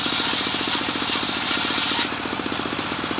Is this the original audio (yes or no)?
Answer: yes